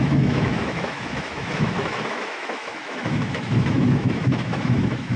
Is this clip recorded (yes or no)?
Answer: no